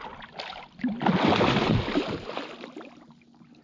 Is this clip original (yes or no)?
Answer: yes